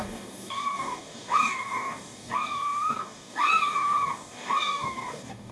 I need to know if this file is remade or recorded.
remade